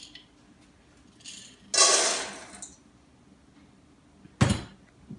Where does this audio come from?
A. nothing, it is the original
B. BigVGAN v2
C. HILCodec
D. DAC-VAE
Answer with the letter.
A